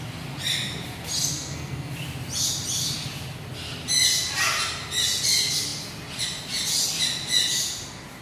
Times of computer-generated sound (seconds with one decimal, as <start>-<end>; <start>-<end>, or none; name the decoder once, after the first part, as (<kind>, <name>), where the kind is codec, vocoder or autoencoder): 1.3-1.9 (codec, SNAC)

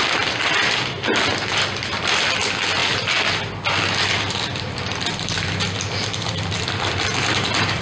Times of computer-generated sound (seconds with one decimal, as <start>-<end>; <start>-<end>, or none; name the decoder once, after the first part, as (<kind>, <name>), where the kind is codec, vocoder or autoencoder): 0.0-2.8 (vocoder, BigVGAN v2); 3.9-7.8